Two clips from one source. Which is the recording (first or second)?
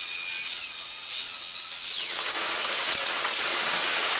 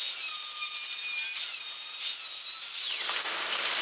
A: second